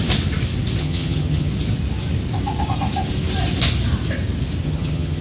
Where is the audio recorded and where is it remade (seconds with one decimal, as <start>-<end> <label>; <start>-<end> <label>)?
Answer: 0.0-0.8 recorded; 0.8-1.5 remade; 1.5-4.6 recorded; 4.6-5.2 remade